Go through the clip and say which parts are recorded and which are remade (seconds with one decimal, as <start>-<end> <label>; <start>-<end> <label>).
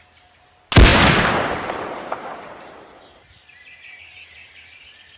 0.0-0.9 recorded; 0.9-4.0 remade; 4.0-5.2 recorded